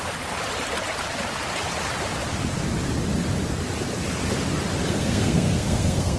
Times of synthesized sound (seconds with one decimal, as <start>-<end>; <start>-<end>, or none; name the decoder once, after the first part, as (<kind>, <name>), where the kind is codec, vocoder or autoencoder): 4.8-6.2 (codec, SNAC)